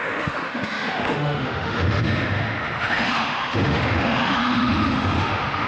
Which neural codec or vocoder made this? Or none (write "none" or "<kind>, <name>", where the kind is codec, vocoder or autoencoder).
autoencoder, DAC-VAE